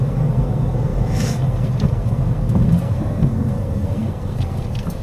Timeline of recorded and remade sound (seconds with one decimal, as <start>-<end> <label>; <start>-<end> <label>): 0.0-5.0 remade